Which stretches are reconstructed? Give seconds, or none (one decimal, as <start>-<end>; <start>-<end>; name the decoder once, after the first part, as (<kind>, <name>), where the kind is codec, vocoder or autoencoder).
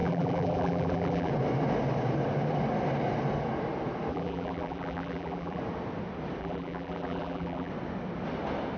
0.0-1.3 (vocoder, BigVGAN v2); 4.1-5.6; 6.4-7.7